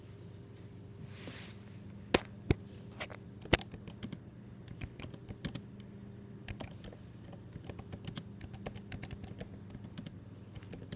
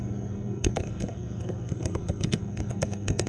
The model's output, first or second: second